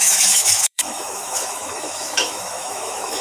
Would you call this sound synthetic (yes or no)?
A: yes